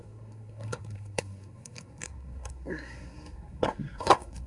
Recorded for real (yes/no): no